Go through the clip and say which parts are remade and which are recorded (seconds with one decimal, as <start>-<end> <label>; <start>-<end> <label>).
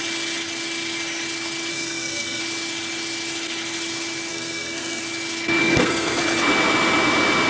0.0-1.7 recorded; 1.7-2.4 remade; 2.4-4.3 recorded; 4.3-5.0 remade; 5.0-5.6 recorded; 5.6-6.2 remade; 6.2-7.5 recorded